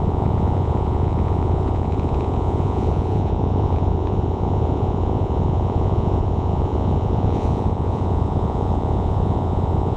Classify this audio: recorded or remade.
remade